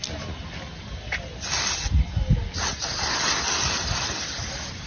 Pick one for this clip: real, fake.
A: real